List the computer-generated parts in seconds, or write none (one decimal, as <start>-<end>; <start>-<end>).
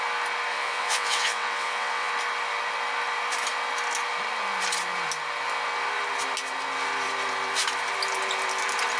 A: 0.5-2.1